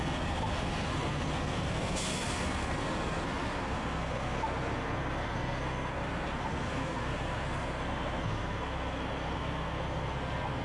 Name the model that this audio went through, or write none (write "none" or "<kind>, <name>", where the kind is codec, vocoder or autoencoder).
codec, SNAC